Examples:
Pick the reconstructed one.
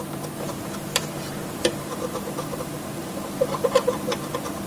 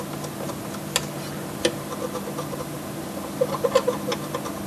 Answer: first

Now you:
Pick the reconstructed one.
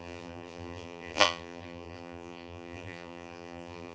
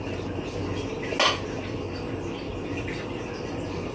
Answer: first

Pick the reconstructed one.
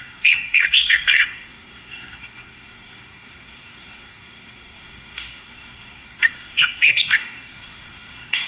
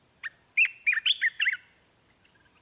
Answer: first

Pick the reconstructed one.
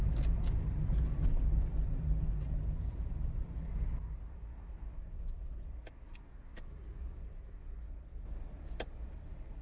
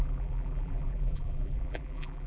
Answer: second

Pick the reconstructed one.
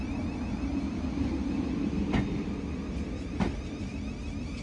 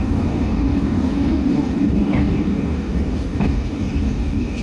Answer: second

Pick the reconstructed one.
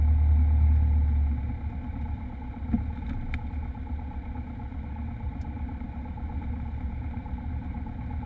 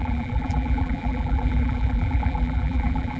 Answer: second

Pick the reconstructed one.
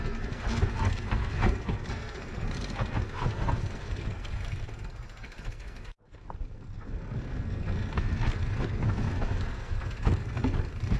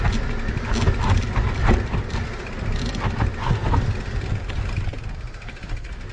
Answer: first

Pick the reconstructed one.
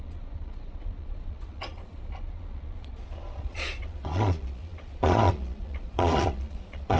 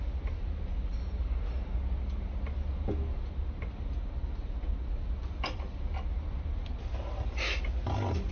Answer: first